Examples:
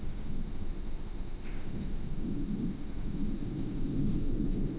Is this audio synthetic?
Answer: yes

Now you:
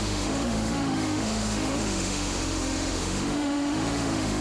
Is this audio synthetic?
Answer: yes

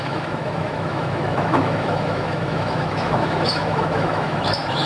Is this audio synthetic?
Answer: yes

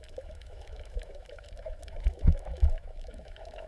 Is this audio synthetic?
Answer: yes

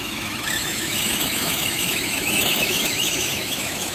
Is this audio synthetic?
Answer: yes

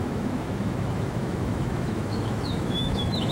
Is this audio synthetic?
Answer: yes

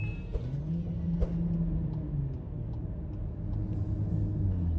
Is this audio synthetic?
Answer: no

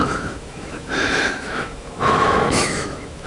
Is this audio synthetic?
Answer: yes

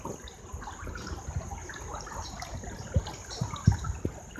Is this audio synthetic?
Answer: no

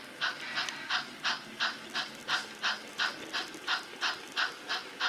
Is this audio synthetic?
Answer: no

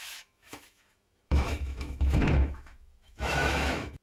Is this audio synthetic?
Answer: yes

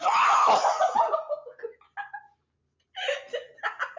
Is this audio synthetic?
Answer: no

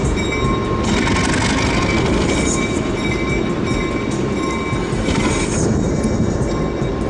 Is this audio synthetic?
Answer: no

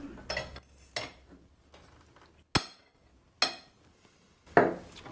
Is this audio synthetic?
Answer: no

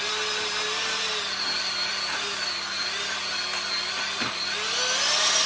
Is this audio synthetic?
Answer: no